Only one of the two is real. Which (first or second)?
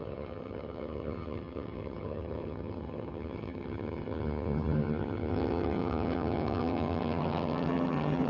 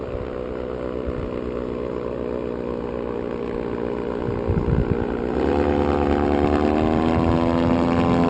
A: second